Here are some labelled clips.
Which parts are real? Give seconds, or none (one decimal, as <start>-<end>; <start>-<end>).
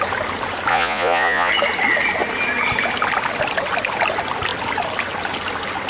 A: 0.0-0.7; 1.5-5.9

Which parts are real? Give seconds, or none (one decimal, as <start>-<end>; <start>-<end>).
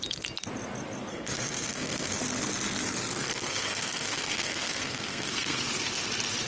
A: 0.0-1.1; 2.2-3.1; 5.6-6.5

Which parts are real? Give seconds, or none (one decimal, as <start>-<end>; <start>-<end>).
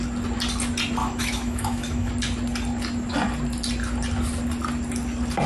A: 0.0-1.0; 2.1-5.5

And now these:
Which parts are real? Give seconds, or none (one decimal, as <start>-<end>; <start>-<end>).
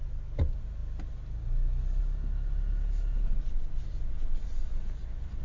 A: 0.0-5.4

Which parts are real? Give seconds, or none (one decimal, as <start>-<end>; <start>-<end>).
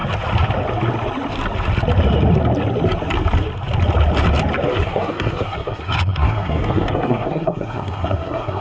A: 0.0-4.7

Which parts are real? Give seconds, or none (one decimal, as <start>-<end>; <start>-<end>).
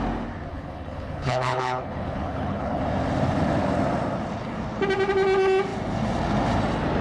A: 0.0-0.5; 2.8-7.0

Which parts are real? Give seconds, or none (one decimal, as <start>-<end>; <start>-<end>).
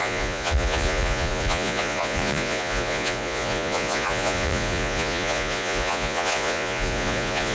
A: none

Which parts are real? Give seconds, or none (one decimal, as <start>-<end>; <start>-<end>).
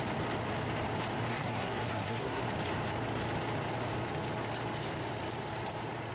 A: 0.0-1.3; 2.4-6.1